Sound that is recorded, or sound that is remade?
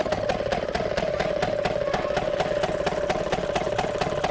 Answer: recorded